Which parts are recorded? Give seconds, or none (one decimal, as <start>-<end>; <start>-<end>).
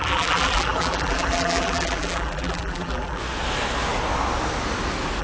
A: 3.2-5.2